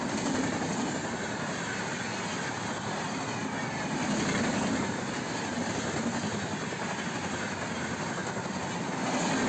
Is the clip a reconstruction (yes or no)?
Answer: no